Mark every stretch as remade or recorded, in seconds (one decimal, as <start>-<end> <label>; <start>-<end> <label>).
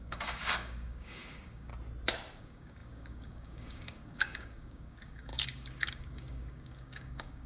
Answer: 0.0-1.7 remade; 1.7-2.4 recorded; 2.4-7.5 remade